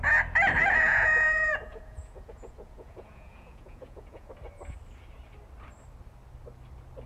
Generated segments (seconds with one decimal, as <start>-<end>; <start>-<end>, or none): 0.6-4.3